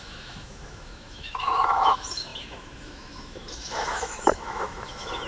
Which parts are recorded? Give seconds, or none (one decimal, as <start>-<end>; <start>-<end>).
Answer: none